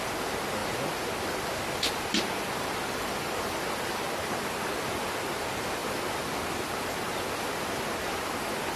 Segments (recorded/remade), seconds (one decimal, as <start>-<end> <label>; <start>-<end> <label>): 0.0-0.6 recorded; 0.6-4.1 remade; 4.1-8.8 recorded